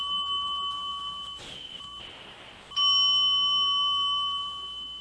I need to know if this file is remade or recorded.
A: recorded